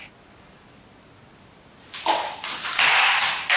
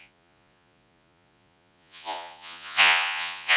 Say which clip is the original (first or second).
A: first